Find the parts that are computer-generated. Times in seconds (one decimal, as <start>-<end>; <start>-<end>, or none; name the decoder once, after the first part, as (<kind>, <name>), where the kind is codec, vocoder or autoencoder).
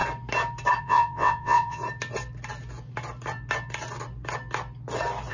0.8-1.8 (vocoder, WaveNeXt)